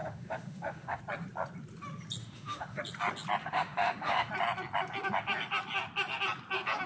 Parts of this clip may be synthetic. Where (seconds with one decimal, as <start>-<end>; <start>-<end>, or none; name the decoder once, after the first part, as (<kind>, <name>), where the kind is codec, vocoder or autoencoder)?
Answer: 0.0-1.0 (autoencoder, DAC-VAE); 2.2-2.8; 3.4-4.3